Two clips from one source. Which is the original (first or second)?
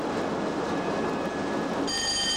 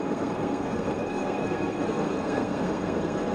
first